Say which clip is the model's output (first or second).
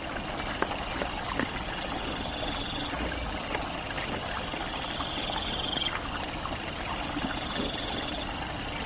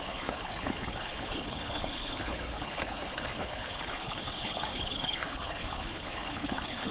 second